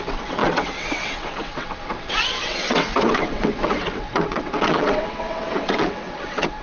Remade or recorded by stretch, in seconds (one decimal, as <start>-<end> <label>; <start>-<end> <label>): 0.0-6.6 remade

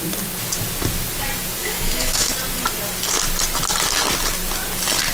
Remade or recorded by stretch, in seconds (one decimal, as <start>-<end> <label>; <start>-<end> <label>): 0.0-1.6 recorded; 1.6-2.3 remade; 2.3-5.1 recorded

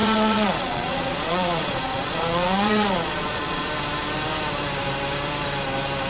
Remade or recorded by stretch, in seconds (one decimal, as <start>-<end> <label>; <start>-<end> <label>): 0.0-3.7 remade; 3.7-6.1 recorded